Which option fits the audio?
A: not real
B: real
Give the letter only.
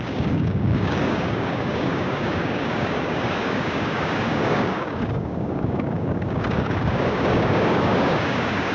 A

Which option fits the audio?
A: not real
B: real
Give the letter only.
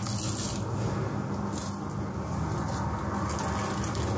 B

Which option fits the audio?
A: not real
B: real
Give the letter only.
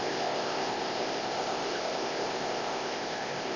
A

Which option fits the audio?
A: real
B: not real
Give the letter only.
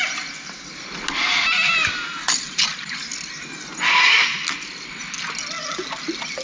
A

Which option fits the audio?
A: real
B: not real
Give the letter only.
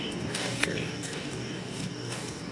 B